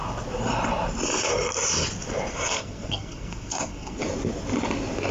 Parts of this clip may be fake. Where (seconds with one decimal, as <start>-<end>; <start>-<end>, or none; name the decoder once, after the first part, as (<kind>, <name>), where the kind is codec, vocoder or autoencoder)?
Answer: 2.3-4.0 (codec, SNAC)